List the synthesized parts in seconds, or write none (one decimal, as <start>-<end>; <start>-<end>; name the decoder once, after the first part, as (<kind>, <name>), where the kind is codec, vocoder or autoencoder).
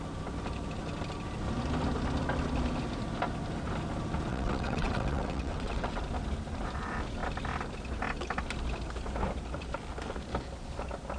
4.3-6.0 (vocoder, WaveNeXt)